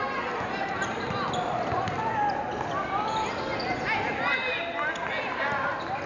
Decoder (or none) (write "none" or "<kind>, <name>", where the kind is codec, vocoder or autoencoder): none